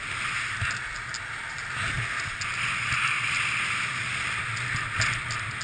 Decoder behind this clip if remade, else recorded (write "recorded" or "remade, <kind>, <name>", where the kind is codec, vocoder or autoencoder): recorded